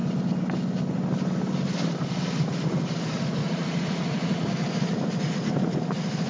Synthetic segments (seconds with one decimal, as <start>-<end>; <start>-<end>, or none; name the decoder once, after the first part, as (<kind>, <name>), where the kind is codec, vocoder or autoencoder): 3.4-4.5 (vocoder, Vocos)